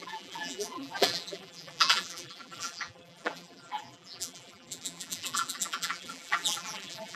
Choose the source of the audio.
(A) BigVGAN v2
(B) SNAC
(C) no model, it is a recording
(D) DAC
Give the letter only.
A